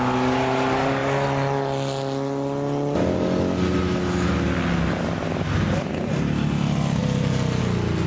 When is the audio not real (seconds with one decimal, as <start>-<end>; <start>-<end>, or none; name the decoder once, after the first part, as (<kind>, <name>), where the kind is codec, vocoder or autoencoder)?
none